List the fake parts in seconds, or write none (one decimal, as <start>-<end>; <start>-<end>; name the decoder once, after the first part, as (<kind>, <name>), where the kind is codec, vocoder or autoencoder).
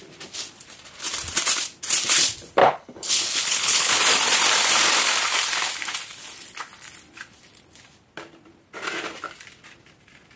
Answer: 2.6-3.9 (codec, HILCodec)